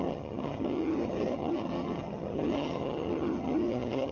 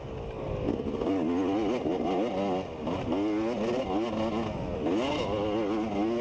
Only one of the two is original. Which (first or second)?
second